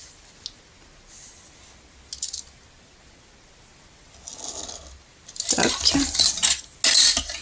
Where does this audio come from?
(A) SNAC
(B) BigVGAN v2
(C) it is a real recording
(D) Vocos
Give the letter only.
C